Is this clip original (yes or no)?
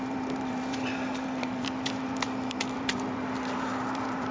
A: no